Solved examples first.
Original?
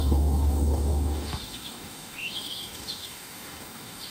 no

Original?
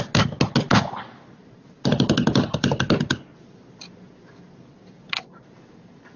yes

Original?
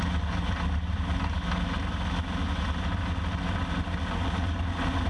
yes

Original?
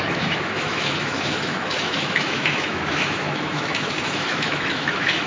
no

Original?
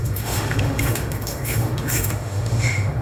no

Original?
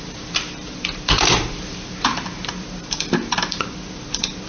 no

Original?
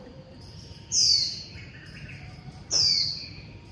no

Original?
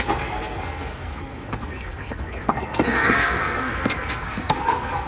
no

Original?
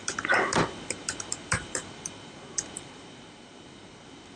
no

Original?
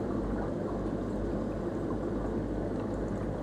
yes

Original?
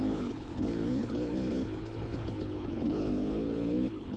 no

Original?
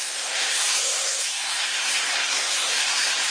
no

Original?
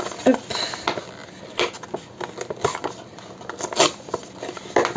yes